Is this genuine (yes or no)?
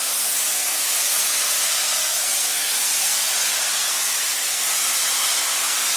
no